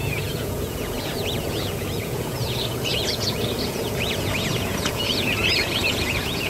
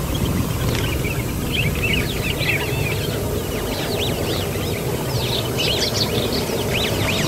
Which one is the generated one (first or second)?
first